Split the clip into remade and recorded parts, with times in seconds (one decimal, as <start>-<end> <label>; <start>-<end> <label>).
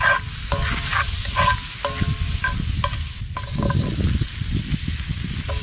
0.0-5.6 recorded